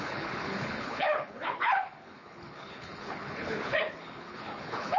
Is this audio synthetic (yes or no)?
yes